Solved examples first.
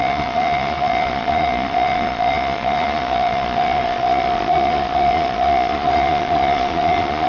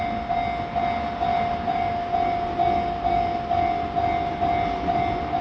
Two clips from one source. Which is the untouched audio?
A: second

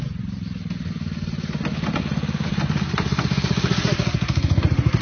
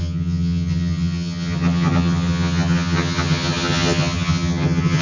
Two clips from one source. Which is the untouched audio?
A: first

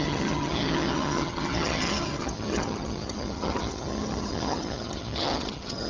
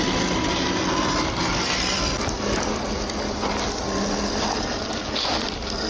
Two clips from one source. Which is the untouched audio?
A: second